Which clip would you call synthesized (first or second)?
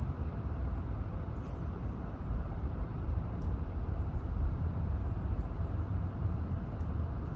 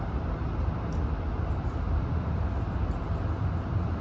first